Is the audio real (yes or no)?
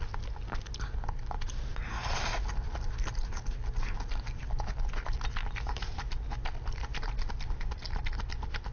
yes